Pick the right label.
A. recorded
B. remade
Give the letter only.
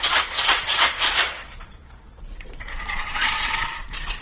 B